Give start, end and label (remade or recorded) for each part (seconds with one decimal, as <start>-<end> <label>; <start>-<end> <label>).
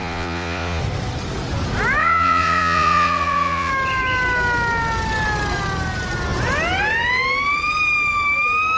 0.0-0.8 remade; 0.8-2.0 recorded; 2.0-3.7 remade; 3.7-8.8 recorded